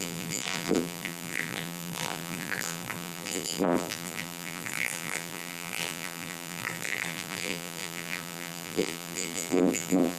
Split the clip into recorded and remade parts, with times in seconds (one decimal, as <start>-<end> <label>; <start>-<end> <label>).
0.0-10.2 remade